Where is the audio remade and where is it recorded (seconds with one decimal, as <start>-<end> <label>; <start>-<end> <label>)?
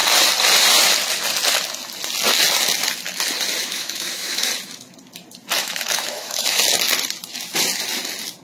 0.0-3.6 recorded; 3.6-4.5 remade; 4.5-5.6 recorded; 5.6-6.6 remade; 6.6-8.4 recorded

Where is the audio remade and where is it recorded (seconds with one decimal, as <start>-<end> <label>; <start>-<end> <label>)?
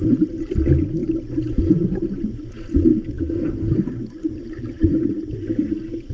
0.0-1.0 recorded; 1.0-2.0 remade; 2.0-6.1 recorded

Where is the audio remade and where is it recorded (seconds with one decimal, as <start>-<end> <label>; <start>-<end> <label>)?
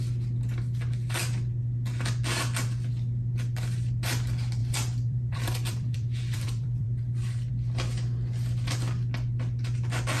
0.0-4.6 recorded; 4.6-7.5 remade; 7.5-10.2 recorded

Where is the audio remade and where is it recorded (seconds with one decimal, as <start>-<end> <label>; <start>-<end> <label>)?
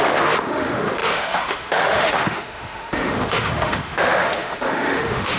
0.0-5.4 remade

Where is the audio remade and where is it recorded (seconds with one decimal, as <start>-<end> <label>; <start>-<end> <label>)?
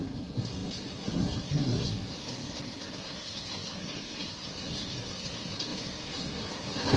0.0-7.0 remade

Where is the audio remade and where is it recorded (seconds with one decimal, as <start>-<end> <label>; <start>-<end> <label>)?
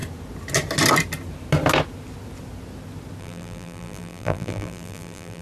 0.0-3.2 recorded; 3.2-5.4 remade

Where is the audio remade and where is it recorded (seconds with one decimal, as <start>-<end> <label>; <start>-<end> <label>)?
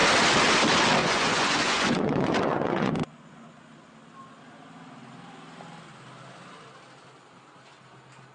0.0-1.0 recorded; 1.0-3.6 remade; 3.6-8.3 recorded